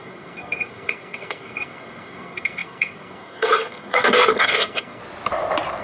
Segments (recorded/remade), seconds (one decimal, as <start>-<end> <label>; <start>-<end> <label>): 0.0-5.0 remade; 5.0-5.8 recorded